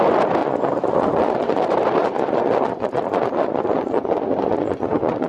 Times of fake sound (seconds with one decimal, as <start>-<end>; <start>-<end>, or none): 0.4-1.6; 2.0-5.3